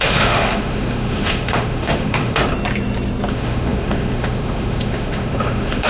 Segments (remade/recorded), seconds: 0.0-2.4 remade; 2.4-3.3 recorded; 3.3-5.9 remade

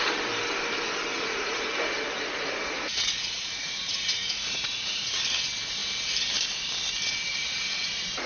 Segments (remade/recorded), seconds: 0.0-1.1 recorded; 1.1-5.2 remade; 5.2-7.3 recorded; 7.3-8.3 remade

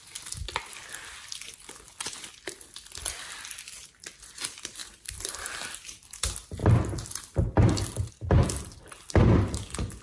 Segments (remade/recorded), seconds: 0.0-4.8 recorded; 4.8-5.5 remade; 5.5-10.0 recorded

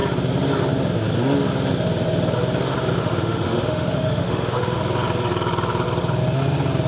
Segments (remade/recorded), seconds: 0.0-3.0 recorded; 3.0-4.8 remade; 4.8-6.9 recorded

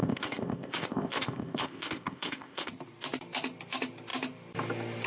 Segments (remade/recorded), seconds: 0.0-2.7 remade; 2.7-5.1 recorded

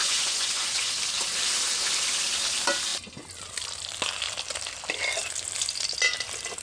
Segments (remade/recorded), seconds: 0.0-0.9 remade; 0.9-6.6 recorded

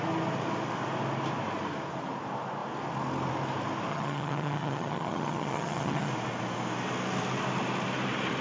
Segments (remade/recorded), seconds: 0.0-3.9 recorded; 3.9-6.1 remade; 6.1-8.4 recorded

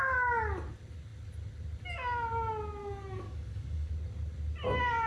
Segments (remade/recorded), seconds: 0.0-2.8 recorded; 2.8-3.9 remade; 3.9-5.1 recorded